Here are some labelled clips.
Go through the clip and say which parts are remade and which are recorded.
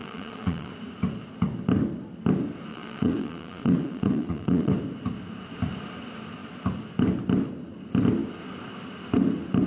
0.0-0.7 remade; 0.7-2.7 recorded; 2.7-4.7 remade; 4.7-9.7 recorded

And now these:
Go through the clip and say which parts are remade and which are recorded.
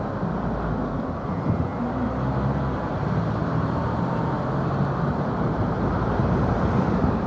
0.0-3.4 recorded; 3.4-7.3 remade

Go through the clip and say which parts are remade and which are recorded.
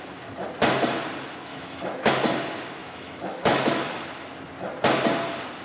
0.0-1.5 recorded; 1.5-2.1 remade; 2.1-2.8 recorded; 2.8-4.0 remade; 4.0-5.6 recorded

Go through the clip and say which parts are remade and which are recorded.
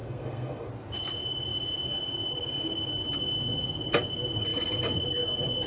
0.0-0.7 remade; 0.7-5.7 recorded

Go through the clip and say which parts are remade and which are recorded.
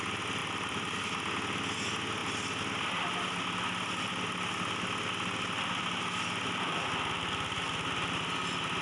0.0-0.4 recorded; 0.4-1.0 remade; 1.0-8.8 recorded